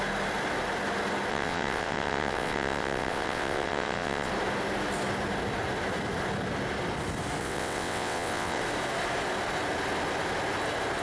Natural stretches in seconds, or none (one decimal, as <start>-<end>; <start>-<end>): 0.0-1.3; 4.3-7.4; 8.6-11.0